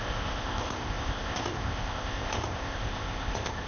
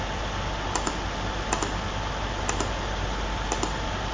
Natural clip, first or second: second